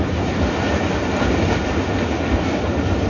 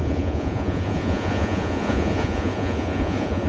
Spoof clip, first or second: second